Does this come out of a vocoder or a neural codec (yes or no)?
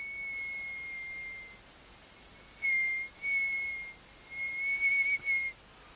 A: no